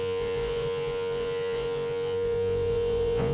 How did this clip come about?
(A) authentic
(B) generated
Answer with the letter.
B